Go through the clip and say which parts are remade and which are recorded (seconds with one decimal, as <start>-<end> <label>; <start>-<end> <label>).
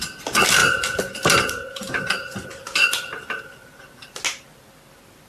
0.0-0.6 recorded; 0.6-1.9 remade; 1.9-5.3 recorded